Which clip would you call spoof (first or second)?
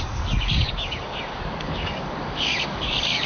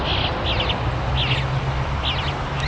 first